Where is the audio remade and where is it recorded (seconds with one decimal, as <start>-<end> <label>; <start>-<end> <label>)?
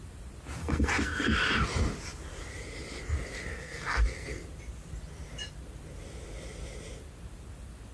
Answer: 0.0-0.6 recorded; 0.6-1.4 remade; 1.4-3.5 recorded; 3.5-4.4 remade; 4.4-7.9 recorded